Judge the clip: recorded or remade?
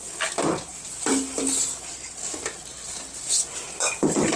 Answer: recorded